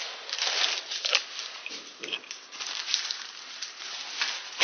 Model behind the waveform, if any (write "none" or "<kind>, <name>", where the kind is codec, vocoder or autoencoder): none